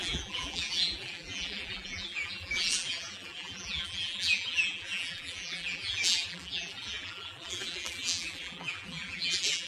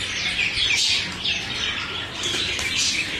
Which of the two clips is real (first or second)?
second